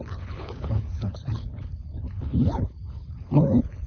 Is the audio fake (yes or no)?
yes